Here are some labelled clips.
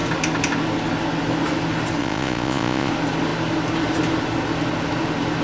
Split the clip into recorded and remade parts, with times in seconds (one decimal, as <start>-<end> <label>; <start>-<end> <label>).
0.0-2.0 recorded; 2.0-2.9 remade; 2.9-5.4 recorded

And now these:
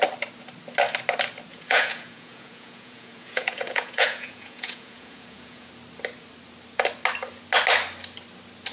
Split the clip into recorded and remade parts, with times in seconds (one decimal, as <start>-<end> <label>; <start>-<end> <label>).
0.0-1.5 recorded; 1.5-5.7 remade; 5.7-8.7 recorded

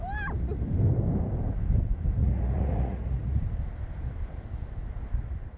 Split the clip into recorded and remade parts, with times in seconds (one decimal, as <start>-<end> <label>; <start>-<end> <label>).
0.0-2.2 recorded; 2.2-3.4 remade; 3.4-5.6 recorded